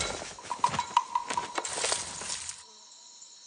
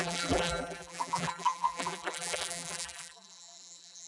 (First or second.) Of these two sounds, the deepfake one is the second